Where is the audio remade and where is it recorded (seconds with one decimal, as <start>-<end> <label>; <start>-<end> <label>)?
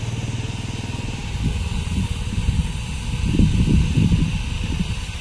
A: 0.0-5.2 recorded